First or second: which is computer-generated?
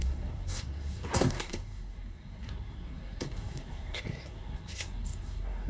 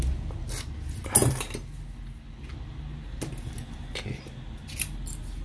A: first